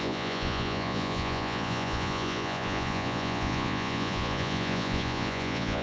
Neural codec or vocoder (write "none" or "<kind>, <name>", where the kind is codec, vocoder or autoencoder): vocoder, Vocos